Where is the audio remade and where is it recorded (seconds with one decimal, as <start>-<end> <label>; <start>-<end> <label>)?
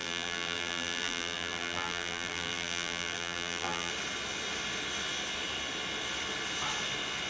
0.0-3.9 remade; 3.9-7.3 recorded